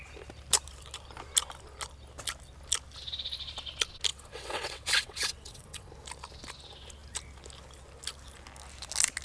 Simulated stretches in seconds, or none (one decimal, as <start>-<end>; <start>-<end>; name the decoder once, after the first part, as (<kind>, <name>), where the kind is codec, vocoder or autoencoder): 4.1-5.9 (vocoder, WaveNeXt)